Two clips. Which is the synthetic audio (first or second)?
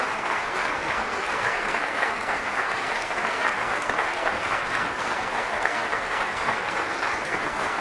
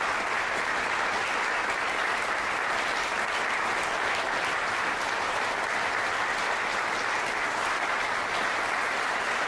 first